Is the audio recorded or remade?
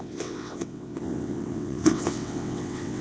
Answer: remade